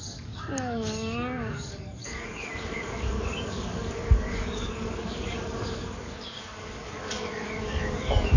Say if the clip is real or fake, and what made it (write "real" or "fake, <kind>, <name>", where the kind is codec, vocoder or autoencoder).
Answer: fake, codec, DAC